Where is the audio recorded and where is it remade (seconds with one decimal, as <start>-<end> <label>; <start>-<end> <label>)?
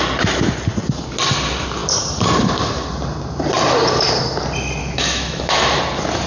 0.0-4.8 recorded; 4.8-5.8 remade; 5.8-6.3 recorded